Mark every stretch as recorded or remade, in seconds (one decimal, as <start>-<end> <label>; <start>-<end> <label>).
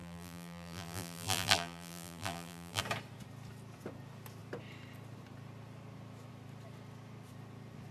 0.0-2.8 remade; 2.8-7.9 recorded